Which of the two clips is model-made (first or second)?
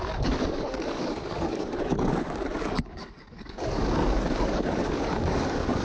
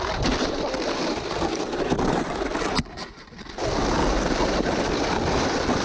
first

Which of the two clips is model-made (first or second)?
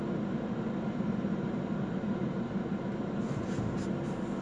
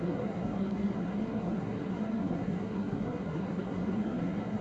second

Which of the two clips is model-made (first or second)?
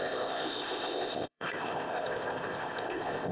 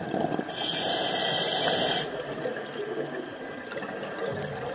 first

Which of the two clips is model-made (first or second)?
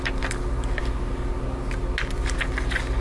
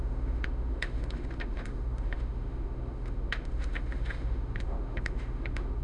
second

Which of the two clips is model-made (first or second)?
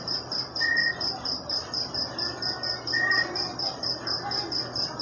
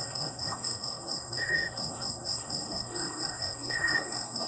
second